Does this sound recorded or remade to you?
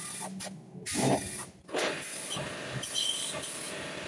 recorded